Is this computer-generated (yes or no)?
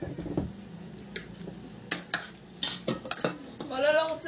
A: no